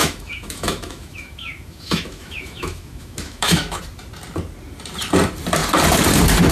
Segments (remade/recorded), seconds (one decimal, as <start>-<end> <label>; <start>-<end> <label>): 0.0-3.8 remade; 3.8-6.5 recorded